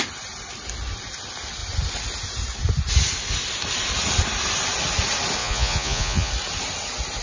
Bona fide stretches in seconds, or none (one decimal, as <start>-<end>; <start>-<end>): 0.0-5.4; 6.3-7.2